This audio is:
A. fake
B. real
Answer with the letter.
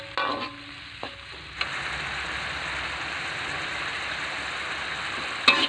B